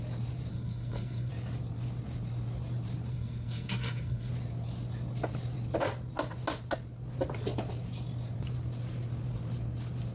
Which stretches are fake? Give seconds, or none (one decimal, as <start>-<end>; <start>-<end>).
0.5-1.3; 3.1-4.3